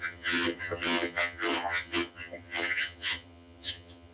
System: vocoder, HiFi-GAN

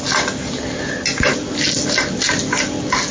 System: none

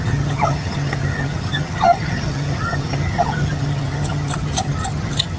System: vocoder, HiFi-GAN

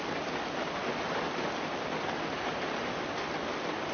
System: none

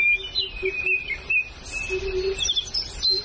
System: none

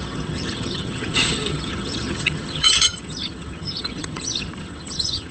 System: vocoder, HiFi-GAN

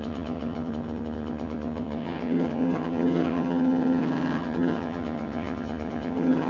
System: vocoder, HiFi-GAN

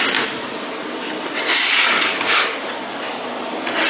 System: none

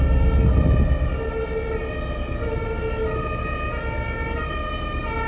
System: none